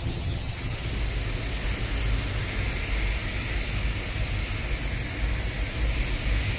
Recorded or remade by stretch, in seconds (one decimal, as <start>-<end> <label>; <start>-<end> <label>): 0.0-0.9 remade; 0.9-6.6 recorded